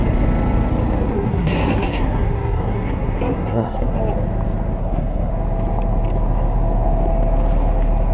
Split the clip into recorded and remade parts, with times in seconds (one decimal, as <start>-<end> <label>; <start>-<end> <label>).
0.0-1.1 recorded; 1.1-4.0 remade; 4.0-4.8 recorded; 4.8-5.3 remade; 5.3-8.1 recorded